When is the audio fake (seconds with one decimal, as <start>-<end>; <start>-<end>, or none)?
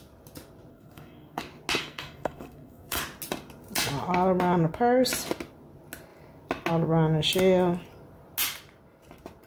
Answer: 0.7-1.4; 1.8-3.0